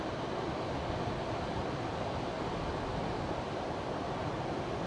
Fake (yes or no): no